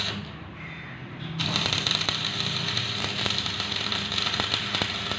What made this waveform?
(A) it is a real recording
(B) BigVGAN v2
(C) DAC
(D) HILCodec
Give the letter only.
B